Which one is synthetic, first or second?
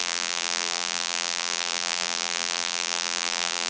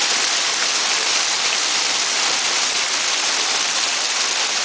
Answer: first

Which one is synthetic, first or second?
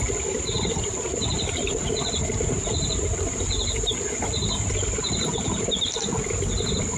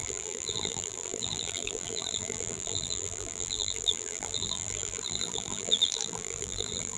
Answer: second